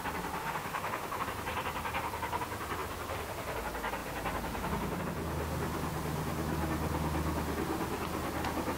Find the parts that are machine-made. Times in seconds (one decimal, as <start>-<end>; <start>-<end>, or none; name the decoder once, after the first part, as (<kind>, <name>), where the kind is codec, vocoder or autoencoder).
0.4-1.2 (autoencoder, DAC-VAE)